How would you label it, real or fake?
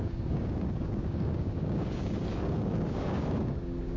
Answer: fake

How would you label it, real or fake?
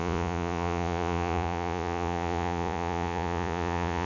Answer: fake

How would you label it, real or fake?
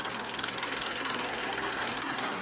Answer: fake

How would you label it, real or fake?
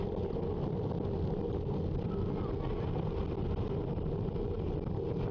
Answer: real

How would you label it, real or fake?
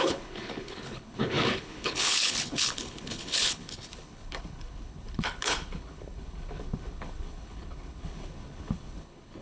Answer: fake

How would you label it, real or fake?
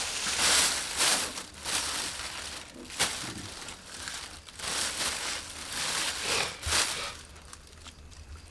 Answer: real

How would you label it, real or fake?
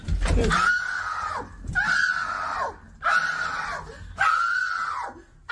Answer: real